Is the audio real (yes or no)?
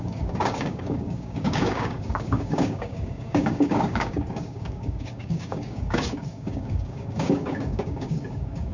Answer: no